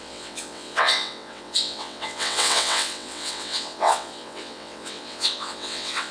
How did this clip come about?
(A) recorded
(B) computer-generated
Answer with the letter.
B